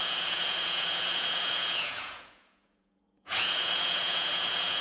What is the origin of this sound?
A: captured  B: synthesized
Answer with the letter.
B